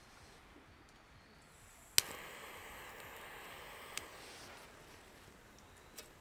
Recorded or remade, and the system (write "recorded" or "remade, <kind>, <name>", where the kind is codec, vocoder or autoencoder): recorded